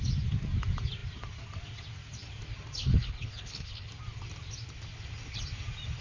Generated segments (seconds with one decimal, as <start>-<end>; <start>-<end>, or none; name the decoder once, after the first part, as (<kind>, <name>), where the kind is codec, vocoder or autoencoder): 2.8-3.9 (codec, HILCodec)